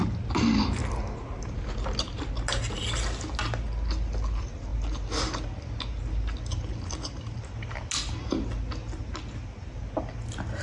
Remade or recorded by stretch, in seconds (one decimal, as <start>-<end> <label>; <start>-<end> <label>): 0.0-10.6 recorded